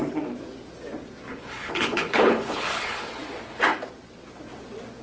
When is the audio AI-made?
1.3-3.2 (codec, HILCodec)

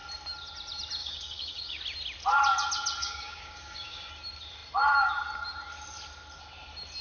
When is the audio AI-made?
1.0-1.8 (codec, DAC); 3.0-4.1